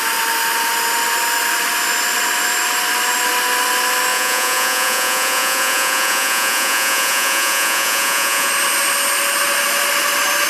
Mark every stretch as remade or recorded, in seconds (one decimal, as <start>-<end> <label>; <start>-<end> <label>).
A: 0.0-4.1 recorded; 4.1-8.5 remade; 8.5-10.5 recorded